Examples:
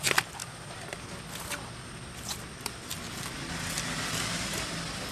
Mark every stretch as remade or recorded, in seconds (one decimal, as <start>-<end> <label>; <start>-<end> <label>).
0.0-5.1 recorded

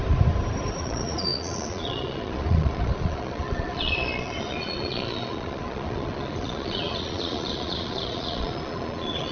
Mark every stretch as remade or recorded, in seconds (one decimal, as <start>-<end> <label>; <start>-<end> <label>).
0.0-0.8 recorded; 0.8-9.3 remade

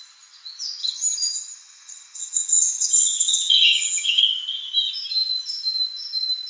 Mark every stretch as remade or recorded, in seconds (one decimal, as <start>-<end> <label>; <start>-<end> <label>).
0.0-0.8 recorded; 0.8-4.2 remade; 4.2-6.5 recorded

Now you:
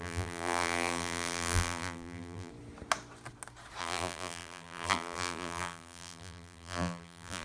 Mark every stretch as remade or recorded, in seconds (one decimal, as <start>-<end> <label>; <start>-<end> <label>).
0.0-2.5 remade; 2.5-3.8 recorded; 3.8-7.4 remade

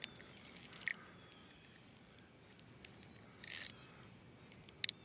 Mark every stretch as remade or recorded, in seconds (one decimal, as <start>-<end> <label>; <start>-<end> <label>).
0.0-5.0 recorded